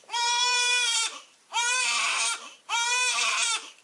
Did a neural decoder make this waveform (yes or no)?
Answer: yes